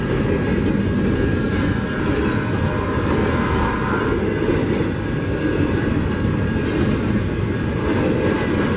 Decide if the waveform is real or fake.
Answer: real